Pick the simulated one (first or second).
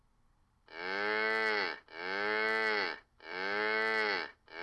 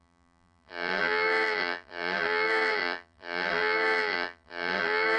second